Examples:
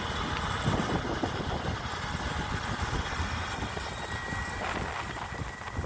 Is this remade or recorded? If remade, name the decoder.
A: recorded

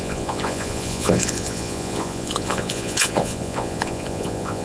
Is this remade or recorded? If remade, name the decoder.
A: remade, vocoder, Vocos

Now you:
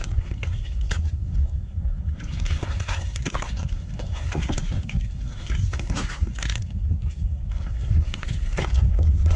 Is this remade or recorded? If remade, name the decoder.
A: remade, codec, SNAC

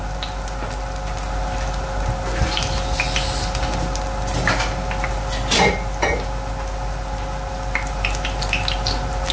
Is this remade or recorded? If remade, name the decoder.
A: recorded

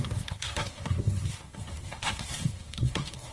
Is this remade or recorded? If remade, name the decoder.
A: remade, codec, SNAC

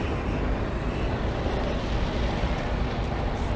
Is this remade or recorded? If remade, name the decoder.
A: recorded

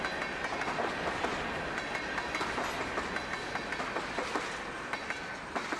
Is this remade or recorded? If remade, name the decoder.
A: recorded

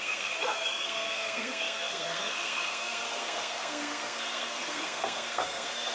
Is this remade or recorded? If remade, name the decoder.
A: remade, codec, SNAC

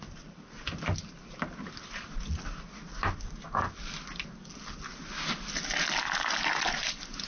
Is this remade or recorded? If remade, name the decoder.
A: recorded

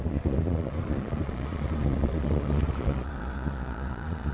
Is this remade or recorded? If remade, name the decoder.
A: remade, vocoder, Vocos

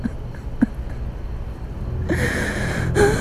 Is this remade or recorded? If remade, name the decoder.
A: recorded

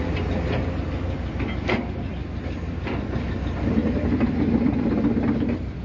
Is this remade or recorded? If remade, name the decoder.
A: recorded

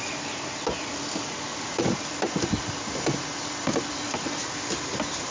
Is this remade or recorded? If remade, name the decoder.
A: recorded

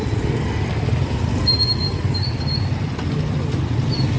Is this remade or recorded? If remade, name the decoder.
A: recorded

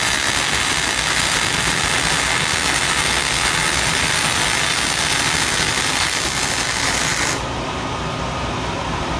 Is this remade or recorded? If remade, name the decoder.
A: recorded